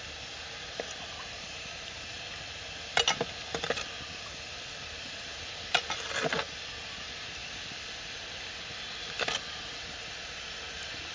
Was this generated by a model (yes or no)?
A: no